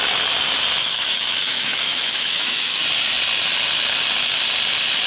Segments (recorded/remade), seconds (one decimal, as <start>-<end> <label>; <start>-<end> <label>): 0.0-0.8 recorded; 0.8-2.8 remade; 2.8-5.1 recorded